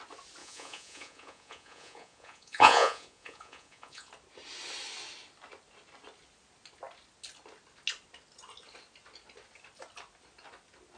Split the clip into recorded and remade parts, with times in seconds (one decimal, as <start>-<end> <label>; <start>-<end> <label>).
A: 0.0-0.4 recorded; 0.4-4.1 remade; 4.1-11.0 recorded